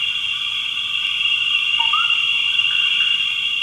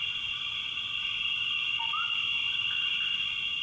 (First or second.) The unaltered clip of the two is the second